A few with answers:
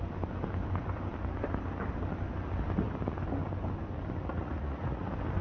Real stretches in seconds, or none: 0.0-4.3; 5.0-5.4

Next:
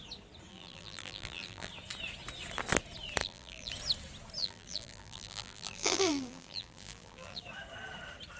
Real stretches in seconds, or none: 0.0-0.5; 1.7-3.2; 3.7-4.4; 7.4-8.4